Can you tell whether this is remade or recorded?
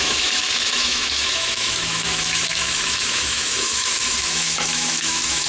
remade